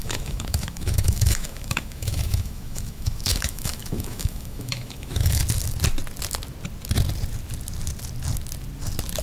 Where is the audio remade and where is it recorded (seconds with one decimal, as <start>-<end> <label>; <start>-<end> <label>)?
0.0-5.4 remade; 5.4-9.2 recorded